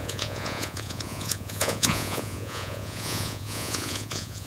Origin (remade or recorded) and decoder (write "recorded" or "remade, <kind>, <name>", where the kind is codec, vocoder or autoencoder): remade, vocoder, Vocos